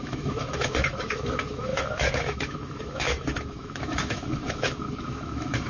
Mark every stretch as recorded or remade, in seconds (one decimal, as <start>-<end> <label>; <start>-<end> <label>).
0.0-5.7 remade